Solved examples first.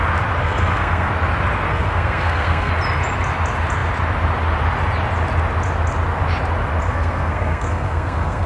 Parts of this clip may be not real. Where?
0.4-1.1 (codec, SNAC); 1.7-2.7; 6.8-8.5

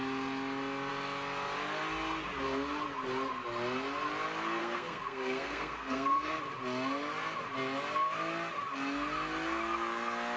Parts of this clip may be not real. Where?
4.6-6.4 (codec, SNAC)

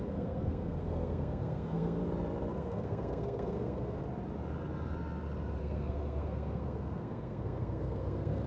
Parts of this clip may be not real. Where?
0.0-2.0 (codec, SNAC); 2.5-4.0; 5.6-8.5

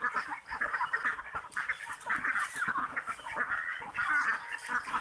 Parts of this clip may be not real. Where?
none

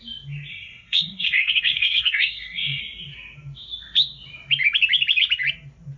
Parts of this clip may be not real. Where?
0.5-2.8 (codec, SNAC)